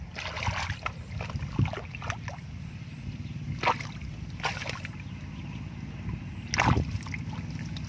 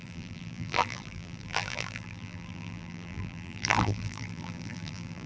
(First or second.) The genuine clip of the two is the first